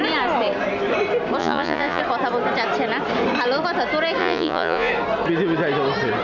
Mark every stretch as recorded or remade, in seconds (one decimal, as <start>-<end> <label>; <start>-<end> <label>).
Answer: 0.0-1.4 recorded; 1.4-2.0 remade; 2.0-4.2 recorded; 4.2-4.9 remade; 4.9-6.2 recorded

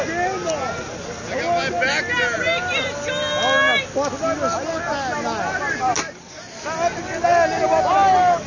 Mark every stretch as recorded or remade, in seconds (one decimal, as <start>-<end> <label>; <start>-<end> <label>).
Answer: 0.0-8.5 recorded

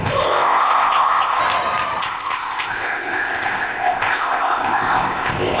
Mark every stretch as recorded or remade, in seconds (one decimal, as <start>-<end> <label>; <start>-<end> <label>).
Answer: 0.0-1.4 remade; 1.4-2.0 recorded; 2.0-5.6 remade

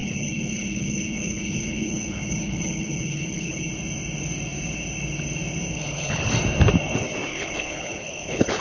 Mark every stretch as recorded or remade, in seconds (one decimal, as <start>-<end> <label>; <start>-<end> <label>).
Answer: 0.0-3.7 remade; 3.7-5.7 recorded; 5.7-6.3 remade; 6.3-7.3 recorded; 7.3-8.6 remade

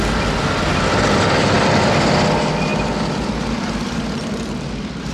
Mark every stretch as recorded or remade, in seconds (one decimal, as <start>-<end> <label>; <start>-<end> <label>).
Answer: 0.0-5.1 recorded

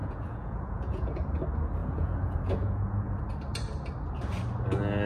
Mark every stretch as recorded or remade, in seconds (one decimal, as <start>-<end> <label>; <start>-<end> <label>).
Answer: 0.0-1.4 remade; 1.4-1.8 recorded; 1.8-3.2 remade; 3.2-5.1 recorded

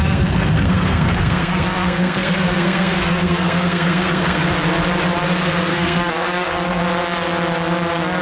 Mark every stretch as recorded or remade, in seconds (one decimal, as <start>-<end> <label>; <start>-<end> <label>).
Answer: 0.0-4.5 remade; 4.5-5.7 recorded; 5.7-6.8 remade; 6.8-8.2 recorded